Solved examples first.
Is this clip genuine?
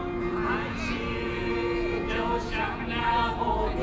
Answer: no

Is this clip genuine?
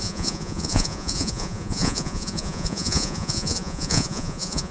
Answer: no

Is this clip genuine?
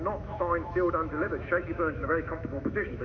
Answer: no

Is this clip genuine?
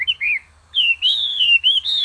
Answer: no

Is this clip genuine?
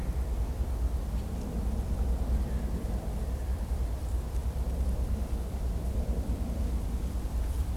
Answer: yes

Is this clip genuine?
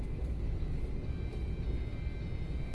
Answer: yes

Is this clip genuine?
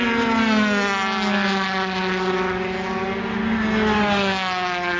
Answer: yes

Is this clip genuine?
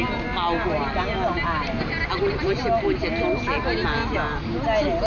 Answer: yes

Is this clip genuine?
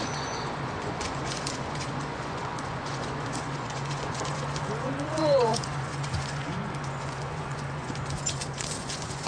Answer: no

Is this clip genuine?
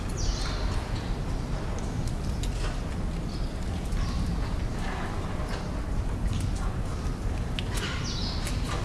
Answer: yes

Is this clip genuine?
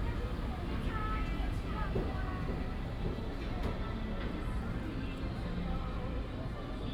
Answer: yes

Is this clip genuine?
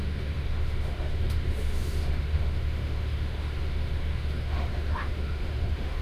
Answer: no